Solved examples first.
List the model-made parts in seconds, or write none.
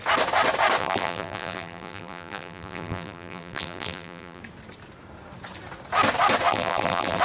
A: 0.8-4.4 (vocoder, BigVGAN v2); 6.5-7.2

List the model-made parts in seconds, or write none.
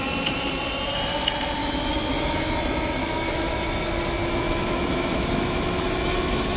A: 1.6-2.6 (autoencoder, DAC-VAE); 3.0-3.5; 4.2-6.0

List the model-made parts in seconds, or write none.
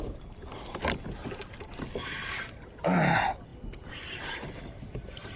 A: none